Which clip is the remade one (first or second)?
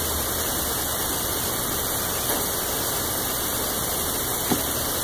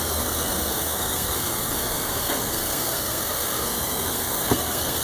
second